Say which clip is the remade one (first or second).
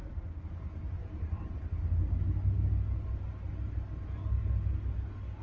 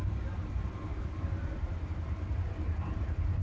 second